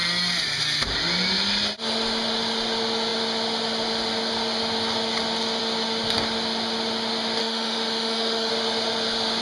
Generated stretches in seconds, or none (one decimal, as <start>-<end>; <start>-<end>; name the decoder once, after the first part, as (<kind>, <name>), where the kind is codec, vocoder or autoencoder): 7.4-8.5 (autoencoder, DAC-VAE)